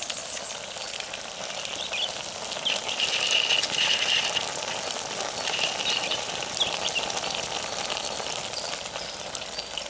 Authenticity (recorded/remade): recorded